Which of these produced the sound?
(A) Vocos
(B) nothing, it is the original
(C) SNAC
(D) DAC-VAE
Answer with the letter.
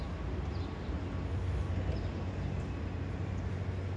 B